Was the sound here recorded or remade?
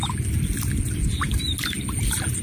recorded